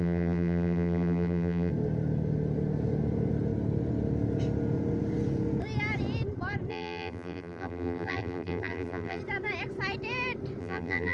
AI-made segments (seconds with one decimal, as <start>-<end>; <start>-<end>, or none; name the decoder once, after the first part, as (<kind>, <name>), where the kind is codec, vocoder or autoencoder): 0.0-1.7 (vocoder, BigVGAN v2); 6.7-9.2; 10.6-11.1

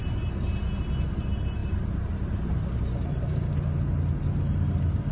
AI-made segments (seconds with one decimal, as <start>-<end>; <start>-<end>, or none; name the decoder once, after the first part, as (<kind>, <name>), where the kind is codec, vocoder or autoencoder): none

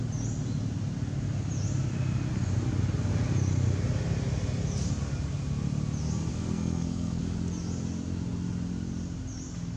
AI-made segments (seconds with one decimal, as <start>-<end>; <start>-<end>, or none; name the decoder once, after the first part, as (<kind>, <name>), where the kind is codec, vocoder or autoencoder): 6.3-7.2 (codec, SNAC)

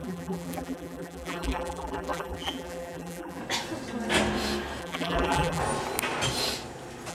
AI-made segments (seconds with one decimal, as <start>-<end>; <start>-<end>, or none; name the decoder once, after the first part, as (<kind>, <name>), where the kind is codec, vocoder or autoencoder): 0.0-3.4 (vocoder, BigVGAN v2); 4.8-5.6

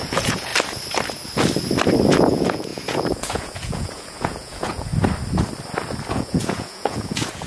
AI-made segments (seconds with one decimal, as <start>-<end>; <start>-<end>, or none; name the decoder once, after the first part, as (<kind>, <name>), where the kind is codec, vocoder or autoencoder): 0.0-0.5 (vocoder, Vocos); 2.1-4.9; 6.1-7.5

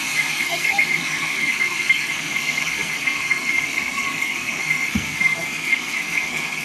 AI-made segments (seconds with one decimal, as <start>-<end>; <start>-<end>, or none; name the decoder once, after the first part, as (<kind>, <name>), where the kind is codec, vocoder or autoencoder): 0.0-6.6 (codec, SNAC)

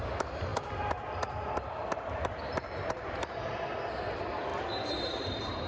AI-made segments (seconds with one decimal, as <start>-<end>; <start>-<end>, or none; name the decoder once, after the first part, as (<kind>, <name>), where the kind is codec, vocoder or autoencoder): 1.8-3.5 (vocoder, BigVGAN v2); 4.5-5.7

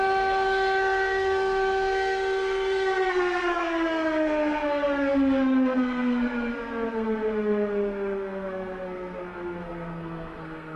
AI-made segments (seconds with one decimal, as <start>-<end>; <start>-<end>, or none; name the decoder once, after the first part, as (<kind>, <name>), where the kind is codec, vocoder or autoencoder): 0.0-10.8 (codec, SNAC)